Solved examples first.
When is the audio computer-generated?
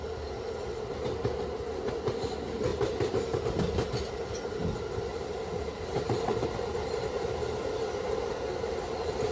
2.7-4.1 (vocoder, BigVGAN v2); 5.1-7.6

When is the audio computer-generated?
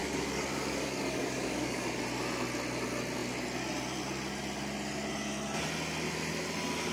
0.0-2.0 (codec, DAC)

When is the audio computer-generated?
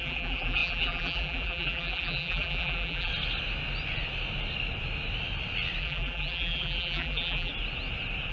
0.0-3.1 (vocoder, BigVGAN v2); 5.8-7.5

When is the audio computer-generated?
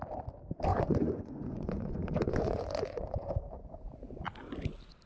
0.7-3.8 (vocoder, Vocos)